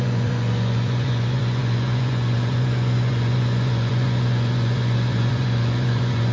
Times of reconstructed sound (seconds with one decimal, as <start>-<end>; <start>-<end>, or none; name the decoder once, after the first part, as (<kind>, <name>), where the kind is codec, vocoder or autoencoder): 0.0-6.3 (vocoder, Vocos)